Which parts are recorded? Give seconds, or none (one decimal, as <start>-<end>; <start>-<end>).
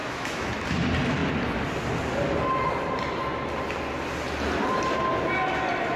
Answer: 0.5-6.0